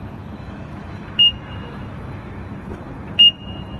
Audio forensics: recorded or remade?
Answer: remade